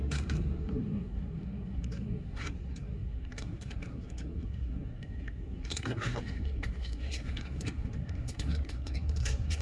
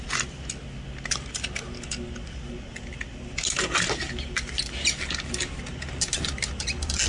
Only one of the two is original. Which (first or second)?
second